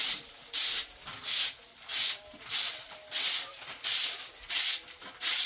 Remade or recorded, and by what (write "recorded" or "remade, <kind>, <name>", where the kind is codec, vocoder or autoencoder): remade, vocoder, BigVGAN v2